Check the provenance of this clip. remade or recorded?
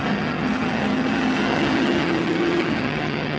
remade